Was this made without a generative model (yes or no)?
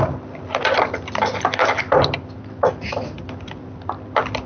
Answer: yes